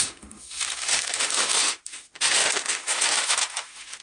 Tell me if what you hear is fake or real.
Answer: fake